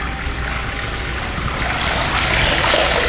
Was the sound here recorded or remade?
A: recorded